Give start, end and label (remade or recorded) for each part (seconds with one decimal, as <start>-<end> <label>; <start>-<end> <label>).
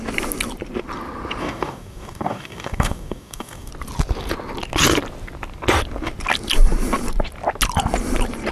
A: 0.0-1.4 recorded; 1.4-3.7 remade; 3.7-8.5 recorded